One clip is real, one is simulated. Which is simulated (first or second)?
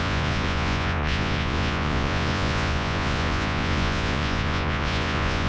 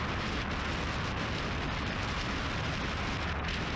first